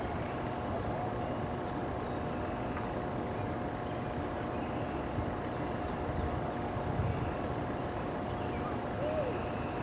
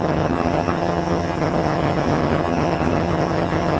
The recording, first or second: first